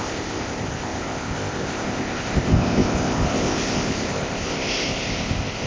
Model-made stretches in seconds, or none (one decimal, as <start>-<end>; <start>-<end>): 0.0-5.7